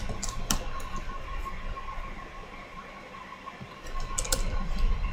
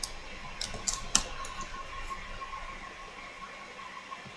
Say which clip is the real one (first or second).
second